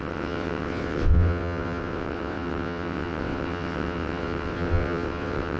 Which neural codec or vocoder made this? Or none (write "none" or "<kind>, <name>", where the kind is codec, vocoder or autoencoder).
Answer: vocoder, WaveNeXt